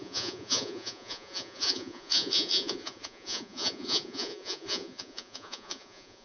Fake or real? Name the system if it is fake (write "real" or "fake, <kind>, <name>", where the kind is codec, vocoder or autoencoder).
fake, vocoder, Vocos